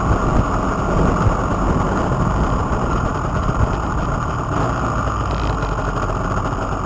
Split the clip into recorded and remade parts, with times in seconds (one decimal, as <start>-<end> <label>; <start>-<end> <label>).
0.0-6.9 recorded